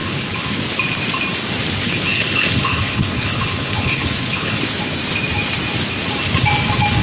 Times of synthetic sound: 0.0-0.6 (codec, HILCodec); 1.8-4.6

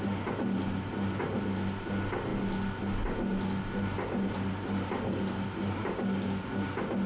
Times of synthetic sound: 5.8-6.4 (codec, DAC)

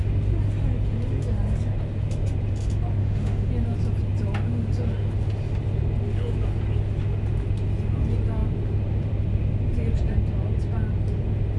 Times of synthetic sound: 3.0-3.5 (autoencoder, DAC-VAE)